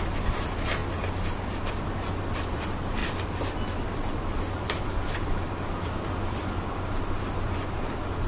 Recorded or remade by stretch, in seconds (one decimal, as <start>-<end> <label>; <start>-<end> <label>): 0.0-0.8 remade; 0.8-1.7 recorded; 1.7-8.3 remade